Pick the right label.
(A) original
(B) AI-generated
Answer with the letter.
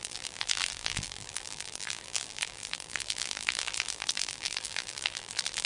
B